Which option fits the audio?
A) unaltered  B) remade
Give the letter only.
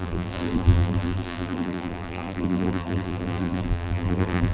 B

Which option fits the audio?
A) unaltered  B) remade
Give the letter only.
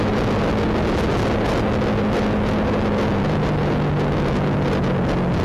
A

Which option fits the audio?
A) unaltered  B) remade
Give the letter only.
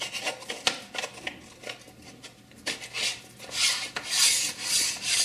A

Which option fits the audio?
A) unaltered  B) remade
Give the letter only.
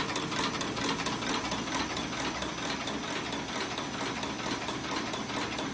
A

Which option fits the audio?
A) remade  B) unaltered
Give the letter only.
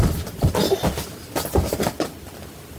B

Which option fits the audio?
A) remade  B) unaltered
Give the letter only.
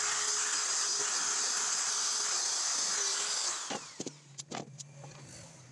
B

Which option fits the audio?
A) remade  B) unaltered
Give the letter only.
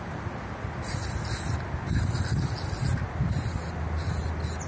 B